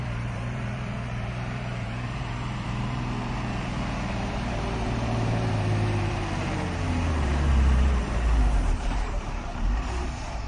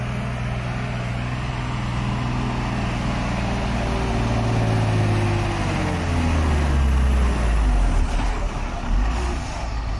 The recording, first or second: second